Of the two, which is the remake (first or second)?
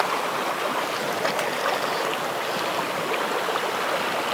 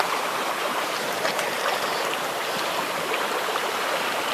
second